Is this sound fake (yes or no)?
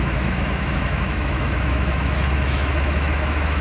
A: yes